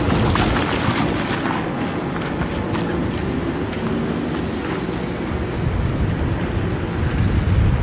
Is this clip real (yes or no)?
yes